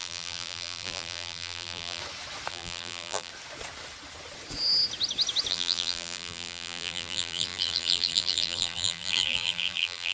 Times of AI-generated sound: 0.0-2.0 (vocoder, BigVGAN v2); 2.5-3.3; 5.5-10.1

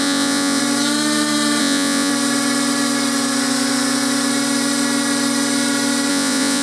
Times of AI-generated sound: 0.0-0.6 (vocoder, Vocos); 1.6-2.1; 6.1-6.6

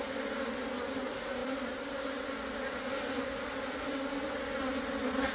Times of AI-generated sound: none

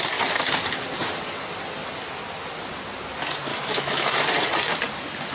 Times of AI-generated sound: 3.5-4.2 (autoencoder, DAC-VAE)